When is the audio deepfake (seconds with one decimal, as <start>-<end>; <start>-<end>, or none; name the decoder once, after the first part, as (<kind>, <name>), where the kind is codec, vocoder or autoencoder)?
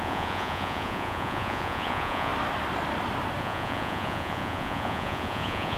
0.0-2.3 (vocoder, Vocos); 3.4-5.8